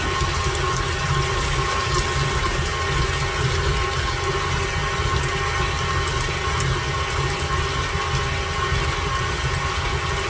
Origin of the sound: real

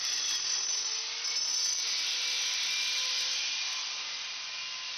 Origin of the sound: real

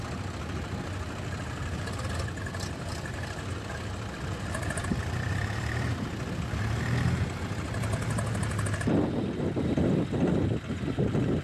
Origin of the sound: real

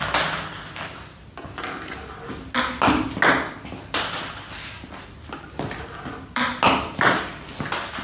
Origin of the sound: real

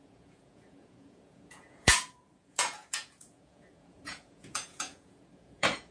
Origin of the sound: fake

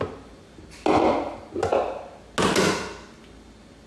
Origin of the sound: real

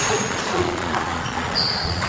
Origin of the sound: fake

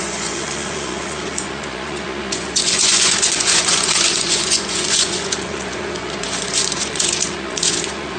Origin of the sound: fake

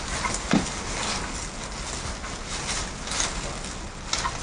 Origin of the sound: real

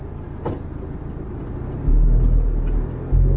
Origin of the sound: real